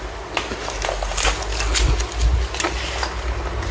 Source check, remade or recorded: recorded